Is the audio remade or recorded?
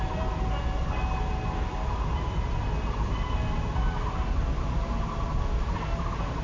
recorded